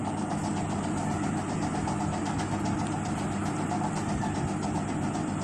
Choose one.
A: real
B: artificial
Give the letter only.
A